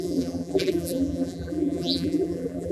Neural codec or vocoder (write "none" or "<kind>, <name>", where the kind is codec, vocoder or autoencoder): vocoder, BigVGAN v2